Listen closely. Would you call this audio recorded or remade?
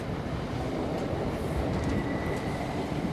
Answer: recorded